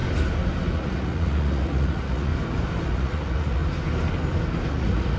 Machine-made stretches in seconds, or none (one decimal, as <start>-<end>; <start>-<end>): 0.7-2.3; 2.9-3.6; 4.7-5.2

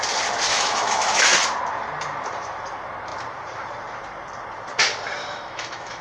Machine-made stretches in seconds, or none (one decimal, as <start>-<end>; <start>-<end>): 0.5-1.2; 5.2-6.0

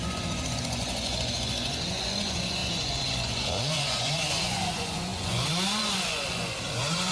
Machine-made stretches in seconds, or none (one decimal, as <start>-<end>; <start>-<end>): 0.0-7.1

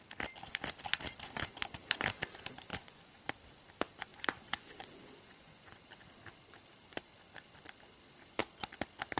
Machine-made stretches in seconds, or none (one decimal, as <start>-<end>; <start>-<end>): 2.7-3.2; 4.1-5.8

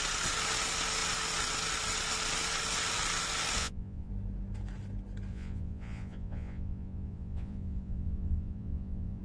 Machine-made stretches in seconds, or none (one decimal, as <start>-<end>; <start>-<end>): 3.6-4.1; 5.3-9.2

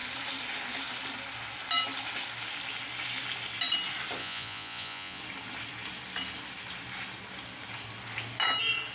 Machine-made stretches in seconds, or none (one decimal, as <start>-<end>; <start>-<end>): 4.2-5.2

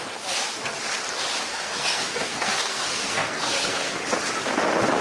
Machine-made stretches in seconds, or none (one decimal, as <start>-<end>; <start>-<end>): 1.5-4.0

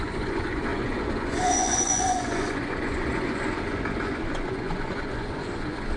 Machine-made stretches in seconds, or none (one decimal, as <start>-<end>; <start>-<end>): 0.0-6.0